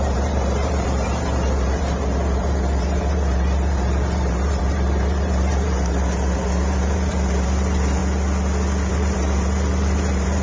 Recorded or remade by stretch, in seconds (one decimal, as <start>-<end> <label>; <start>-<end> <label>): 0.0-8.0 remade; 8.0-8.9 recorded; 8.9-10.4 remade

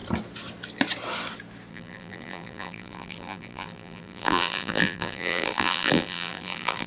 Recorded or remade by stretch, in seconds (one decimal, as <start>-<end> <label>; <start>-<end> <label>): 0.0-1.7 recorded; 1.7-6.9 remade

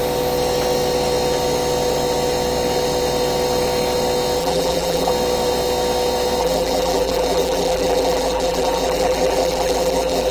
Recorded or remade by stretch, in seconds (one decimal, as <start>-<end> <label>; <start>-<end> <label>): 0.0-4.4 recorded; 4.4-5.1 remade; 5.1-6.4 recorded; 6.4-10.3 remade